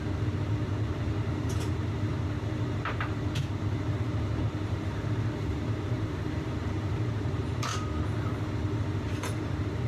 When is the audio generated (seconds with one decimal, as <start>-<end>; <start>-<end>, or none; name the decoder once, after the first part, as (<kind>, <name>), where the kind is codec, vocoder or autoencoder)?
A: 0.0-7.7 (vocoder, BigVGAN v2); 8.8-9.9